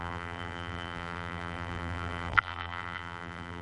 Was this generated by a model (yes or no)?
yes